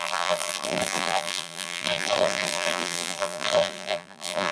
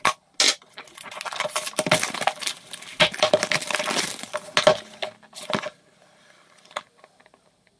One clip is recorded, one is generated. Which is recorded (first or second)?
second